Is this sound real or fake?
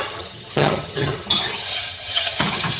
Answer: fake